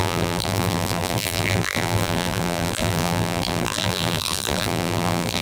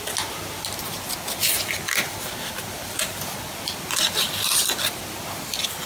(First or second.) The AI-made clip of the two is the first